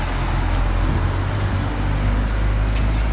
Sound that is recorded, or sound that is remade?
recorded